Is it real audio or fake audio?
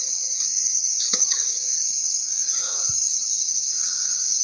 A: fake